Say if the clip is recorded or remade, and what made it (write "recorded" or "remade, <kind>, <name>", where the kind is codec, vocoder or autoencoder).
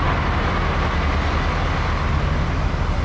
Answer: recorded